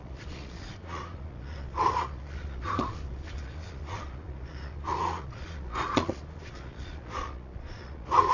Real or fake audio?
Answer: fake